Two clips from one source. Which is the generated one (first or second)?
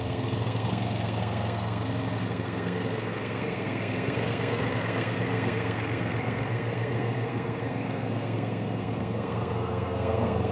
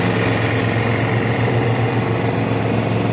first